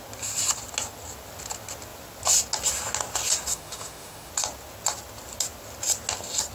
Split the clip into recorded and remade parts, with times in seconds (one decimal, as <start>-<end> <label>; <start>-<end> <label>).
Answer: 0.0-3.5 recorded; 3.5-4.3 remade; 4.3-6.5 recorded